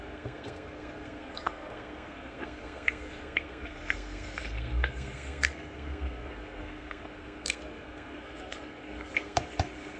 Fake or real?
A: fake